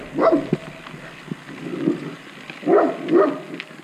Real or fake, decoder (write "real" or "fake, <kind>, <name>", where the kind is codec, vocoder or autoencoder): real